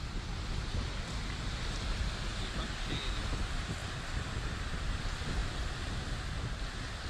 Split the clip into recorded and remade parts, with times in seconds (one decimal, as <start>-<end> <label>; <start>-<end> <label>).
0.0-7.1 recorded